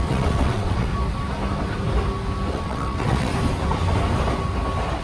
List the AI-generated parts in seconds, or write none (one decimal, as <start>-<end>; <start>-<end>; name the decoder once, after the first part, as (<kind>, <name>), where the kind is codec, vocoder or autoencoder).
0.0-0.9 (vocoder, WaveNeXt); 2.5-3.3